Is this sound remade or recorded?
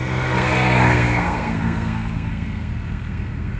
remade